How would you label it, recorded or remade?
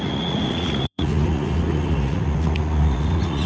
remade